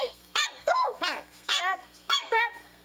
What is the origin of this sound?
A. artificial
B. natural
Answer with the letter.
A